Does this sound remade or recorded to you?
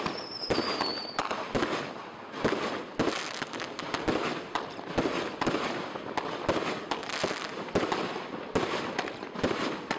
recorded